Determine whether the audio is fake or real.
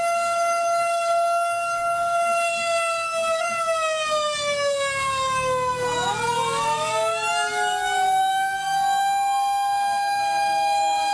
fake